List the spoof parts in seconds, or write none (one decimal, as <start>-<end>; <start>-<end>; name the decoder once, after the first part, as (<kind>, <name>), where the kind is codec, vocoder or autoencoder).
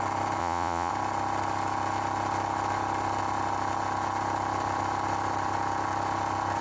0.4-0.9 (vocoder, Vocos)